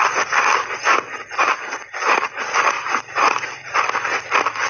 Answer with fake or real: real